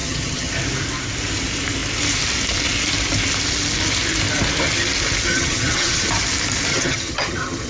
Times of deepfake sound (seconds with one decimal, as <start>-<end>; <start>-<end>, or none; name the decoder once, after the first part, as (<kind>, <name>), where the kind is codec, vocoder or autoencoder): 0.0-0.5 (vocoder, HiFi-GAN); 5.3-6.1; 6.7-7.7